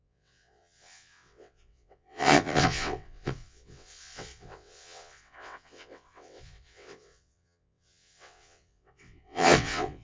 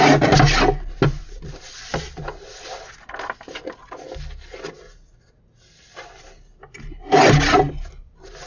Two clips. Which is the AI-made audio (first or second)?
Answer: first